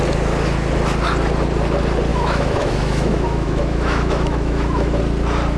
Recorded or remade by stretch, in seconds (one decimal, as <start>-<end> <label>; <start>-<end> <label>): 0.0-2.1 recorded; 2.1-5.0 remade; 5.0-5.6 recorded